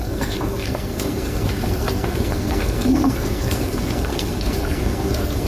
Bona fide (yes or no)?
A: no